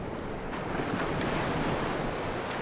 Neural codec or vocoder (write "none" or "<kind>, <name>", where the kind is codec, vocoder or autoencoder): none